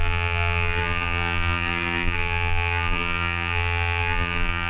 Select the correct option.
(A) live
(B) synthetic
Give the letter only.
B